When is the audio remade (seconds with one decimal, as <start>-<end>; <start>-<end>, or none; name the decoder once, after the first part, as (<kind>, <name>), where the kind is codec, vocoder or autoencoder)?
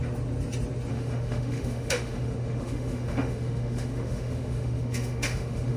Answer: 0.9-5.8 (autoencoder, DAC-VAE)